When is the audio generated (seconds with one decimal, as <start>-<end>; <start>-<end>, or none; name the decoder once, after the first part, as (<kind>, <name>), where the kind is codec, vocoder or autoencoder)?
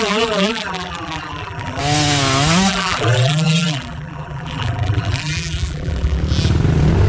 0.0-1.8 (vocoder, BigVGAN v2); 2.7-6.2